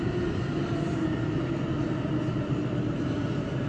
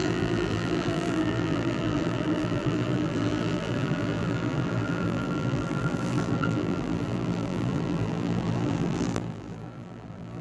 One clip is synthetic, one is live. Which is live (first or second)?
first